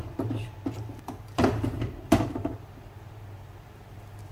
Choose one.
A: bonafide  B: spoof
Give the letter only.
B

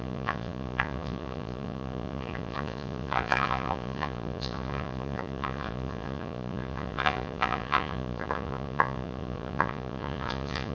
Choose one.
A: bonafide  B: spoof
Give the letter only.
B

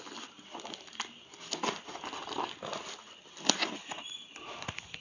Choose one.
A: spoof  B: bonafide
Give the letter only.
B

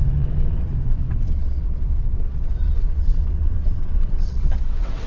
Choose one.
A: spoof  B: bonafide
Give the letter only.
A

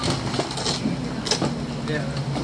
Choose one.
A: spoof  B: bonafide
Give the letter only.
B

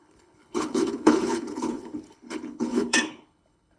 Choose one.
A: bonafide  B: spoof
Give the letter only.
B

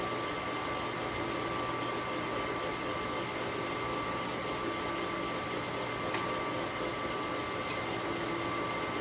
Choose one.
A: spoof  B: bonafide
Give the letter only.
B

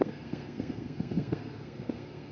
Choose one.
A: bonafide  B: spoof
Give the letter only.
B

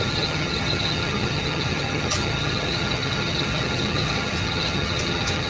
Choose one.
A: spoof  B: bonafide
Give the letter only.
A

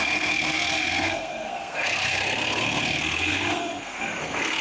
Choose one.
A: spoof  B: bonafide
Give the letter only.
A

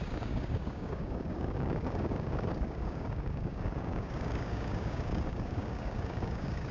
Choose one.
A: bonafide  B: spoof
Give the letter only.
B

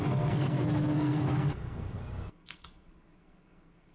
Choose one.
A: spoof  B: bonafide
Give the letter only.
A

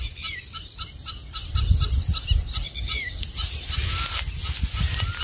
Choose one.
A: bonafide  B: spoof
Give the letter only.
A